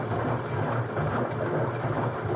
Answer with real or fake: real